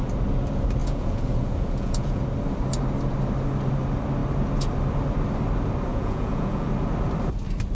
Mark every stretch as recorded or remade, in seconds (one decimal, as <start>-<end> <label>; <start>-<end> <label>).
0.0-0.8 recorded; 0.8-2.2 remade; 2.2-5.9 recorded; 5.9-6.7 remade; 6.7-7.7 recorded

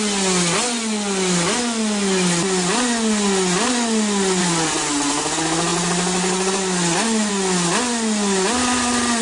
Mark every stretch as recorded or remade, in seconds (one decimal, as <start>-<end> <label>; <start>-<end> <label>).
0.0-4.4 recorded; 4.4-5.1 remade; 5.1-9.2 recorded

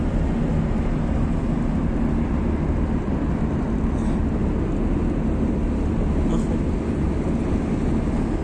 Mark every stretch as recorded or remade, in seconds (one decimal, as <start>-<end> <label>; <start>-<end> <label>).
0.0-8.4 recorded

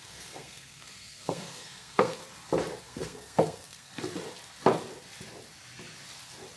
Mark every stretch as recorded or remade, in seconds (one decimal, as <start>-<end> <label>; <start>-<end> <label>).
0.0-2.2 remade; 2.2-2.8 recorded; 2.8-3.9 remade; 3.9-6.6 recorded

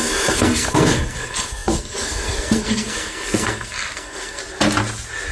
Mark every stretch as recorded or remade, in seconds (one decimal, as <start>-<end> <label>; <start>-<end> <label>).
0.0-4.4 remade; 4.4-5.3 recorded

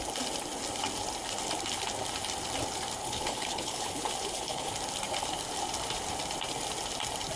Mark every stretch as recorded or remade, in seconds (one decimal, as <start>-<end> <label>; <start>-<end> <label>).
0.0-3.0 recorded; 3.0-4.7 remade; 4.7-7.4 recorded